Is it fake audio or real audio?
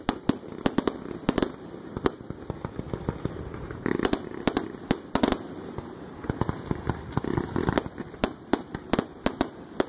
real